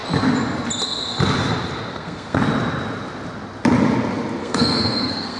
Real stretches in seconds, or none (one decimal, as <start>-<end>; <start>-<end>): 0.0-1.9; 2.4-4.4

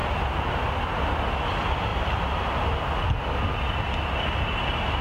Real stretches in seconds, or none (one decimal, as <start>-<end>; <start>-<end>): 0.0-5.0

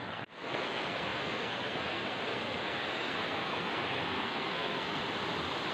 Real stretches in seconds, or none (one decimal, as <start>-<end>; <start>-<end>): 5.0-5.7

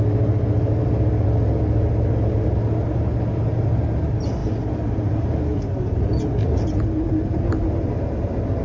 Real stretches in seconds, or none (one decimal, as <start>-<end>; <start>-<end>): 0.0-8.6

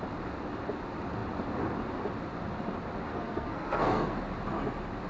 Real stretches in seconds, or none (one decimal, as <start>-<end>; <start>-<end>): 0.0-3.1; 4.2-5.1

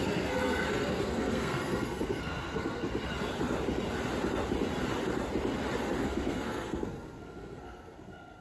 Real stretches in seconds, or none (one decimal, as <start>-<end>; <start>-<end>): 2.9-6.0

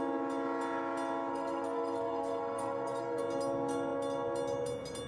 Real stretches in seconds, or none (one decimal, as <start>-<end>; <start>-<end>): 0.0-1.3; 3.2-5.1